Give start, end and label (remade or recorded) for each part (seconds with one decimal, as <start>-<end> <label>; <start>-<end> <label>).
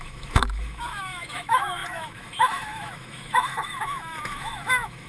0.0-5.1 remade